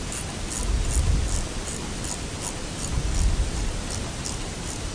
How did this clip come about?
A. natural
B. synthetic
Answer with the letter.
A